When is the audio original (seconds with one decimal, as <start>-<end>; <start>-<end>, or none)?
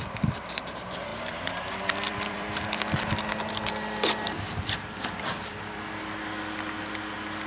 0.0-1.1; 5.6-7.5